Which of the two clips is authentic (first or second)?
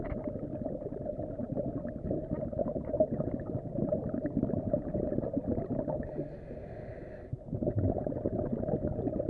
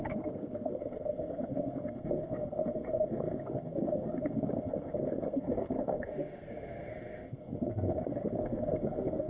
first